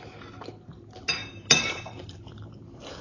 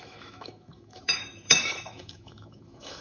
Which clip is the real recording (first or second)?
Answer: first